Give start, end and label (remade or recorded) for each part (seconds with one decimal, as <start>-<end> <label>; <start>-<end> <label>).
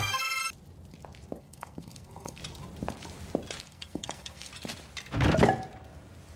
0.0-0.4 remade; 0.4-1.4 recorded; 1.4-2.4 remade; 2.4-3.6 recorded; 3.6-4.5 remade; 4.5-6.4 recorded